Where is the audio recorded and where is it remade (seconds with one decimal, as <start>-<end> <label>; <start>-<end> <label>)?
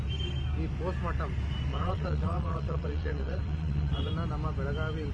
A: 0.0-1.7 recorded; 1.7-4.1 remade; 4.1-5.1 recorded